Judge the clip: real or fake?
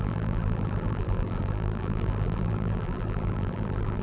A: fake